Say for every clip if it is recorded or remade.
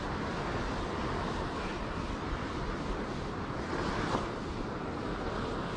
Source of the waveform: recorded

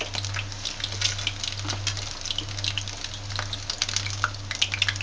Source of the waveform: recorded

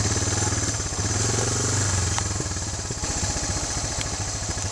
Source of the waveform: recorded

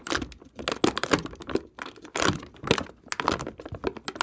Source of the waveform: recorded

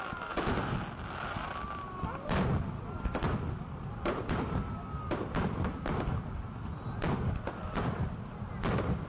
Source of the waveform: recorded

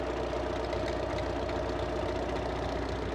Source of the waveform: recorded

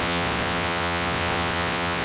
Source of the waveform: remade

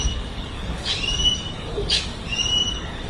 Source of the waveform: remade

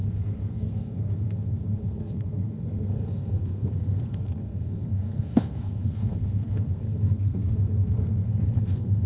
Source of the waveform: remade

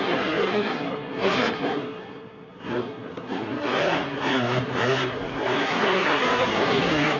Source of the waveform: remade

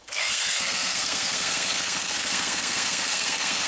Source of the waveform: remade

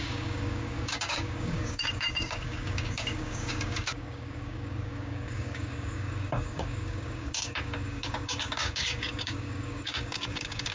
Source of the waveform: remade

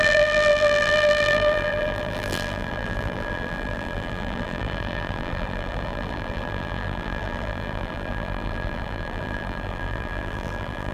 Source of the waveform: remade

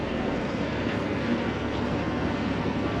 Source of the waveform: remade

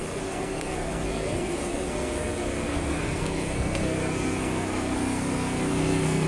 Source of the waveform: remade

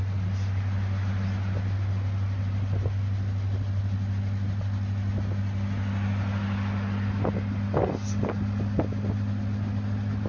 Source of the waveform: recorded